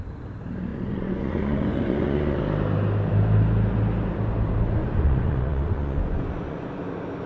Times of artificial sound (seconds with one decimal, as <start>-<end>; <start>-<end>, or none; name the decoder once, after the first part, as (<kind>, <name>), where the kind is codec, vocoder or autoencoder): 0.7-2.4 (vocoder, Vocos); 4.8-6.8

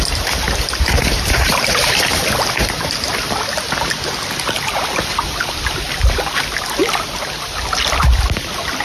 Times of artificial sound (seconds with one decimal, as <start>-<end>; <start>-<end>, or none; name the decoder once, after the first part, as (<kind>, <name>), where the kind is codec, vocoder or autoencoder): none

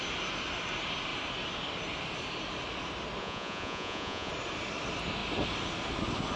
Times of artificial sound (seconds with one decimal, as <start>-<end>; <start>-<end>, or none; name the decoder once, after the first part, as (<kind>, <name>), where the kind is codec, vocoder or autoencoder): 3.2-4.3 (vocoder, Vocos)

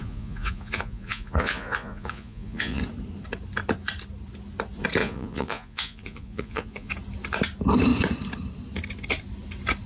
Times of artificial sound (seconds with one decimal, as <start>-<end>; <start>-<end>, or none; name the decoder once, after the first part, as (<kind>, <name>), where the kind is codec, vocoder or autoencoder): 0.0-2.8 (vocoder, Vocos); 5.0-6.9

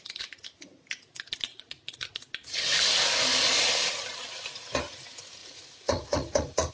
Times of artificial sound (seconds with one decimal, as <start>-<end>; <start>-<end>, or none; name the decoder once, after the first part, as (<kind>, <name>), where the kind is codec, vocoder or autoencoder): 1.5-2.1 (vocoder, Vocos); 5.4-6.7

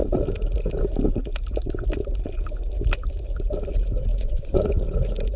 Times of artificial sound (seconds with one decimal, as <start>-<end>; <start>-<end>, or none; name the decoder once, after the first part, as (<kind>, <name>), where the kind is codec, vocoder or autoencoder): 4.1-4.7 (vocoder, Vocos)

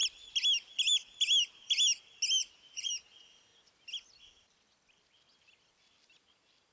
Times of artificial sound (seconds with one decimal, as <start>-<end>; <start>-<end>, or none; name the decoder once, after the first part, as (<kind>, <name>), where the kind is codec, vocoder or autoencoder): 2.4-2.9 (vocoder, Vocos)

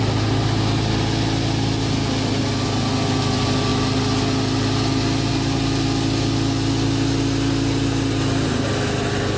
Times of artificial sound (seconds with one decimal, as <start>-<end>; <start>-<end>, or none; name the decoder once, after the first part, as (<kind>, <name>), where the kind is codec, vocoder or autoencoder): none